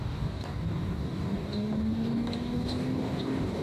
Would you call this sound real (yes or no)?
no